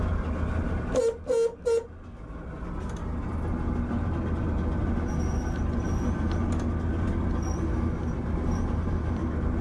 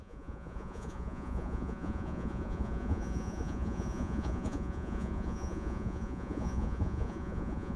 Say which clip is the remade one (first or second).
second